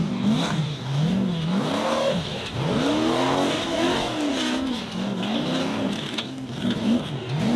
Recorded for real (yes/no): no